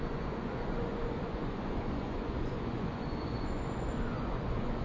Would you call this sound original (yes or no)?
no